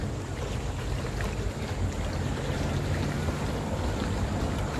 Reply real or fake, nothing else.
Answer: real